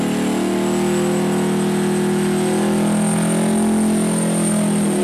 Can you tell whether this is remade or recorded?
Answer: recorded